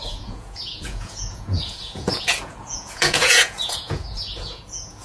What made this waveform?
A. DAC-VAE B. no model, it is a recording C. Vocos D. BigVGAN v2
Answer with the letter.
C